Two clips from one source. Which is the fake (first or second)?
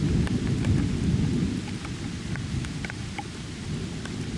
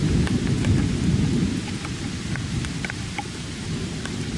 second